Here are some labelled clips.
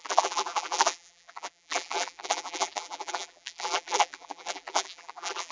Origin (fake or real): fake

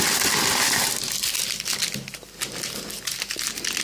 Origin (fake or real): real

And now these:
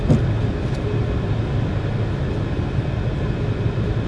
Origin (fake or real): real